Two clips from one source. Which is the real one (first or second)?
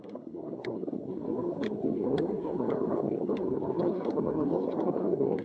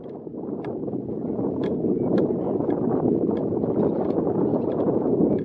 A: second